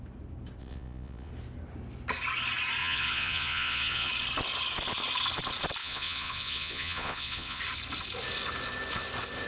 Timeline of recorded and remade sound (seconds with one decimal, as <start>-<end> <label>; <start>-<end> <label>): 0.0-0.6 recorded; 0.6-1.3 remade; 1.3-2.8 recorded; 2.8-4.1 remade; 4.1-5.8 recorded; 5.8-7.6 remade; 7.6-9.5 recorded